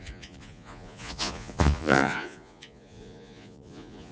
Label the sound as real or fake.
fake